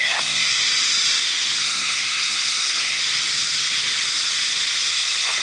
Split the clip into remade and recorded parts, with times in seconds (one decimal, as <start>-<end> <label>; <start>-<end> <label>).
0.0-0.6 remade; 0.6-1.6 recorded; 1.6-3.0 remade; 3.0-4.9 recorded; 4.9-5.4 remade